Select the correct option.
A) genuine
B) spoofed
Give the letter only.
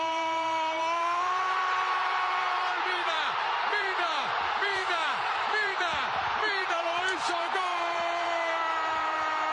B